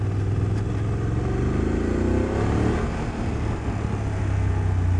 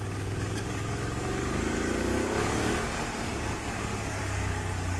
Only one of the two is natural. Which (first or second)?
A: first